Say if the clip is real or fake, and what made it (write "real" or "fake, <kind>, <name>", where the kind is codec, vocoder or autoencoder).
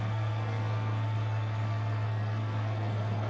fake, codec, SNAC